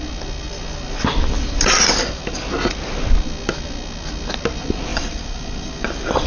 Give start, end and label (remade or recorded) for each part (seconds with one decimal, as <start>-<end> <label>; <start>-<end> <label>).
0.0-4.9 recorded; 4.9-6.3 remade